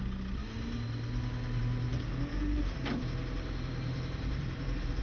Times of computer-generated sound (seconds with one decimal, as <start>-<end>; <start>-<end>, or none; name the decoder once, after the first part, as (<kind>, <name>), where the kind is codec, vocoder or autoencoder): 2.3-5.0 (vocoder, BigVGAN v2)